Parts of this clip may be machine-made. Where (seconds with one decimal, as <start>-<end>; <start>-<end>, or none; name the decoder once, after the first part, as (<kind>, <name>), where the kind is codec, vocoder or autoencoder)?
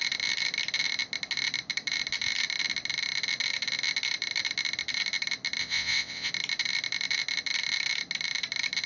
5.6-6.3 (vocoder, WaveNeXt)